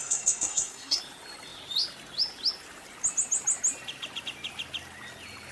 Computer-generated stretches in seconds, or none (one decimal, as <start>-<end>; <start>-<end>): 0.0-1.0